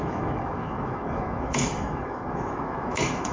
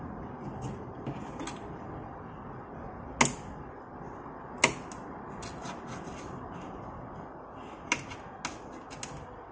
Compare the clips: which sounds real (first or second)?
second